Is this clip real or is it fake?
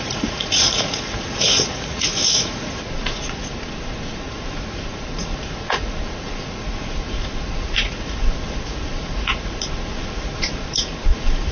fake